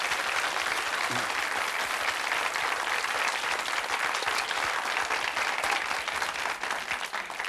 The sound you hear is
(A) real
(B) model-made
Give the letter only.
A